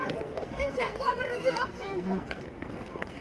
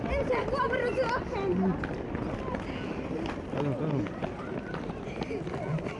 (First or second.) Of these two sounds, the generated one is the first